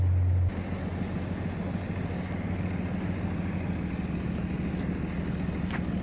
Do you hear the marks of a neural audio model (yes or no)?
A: no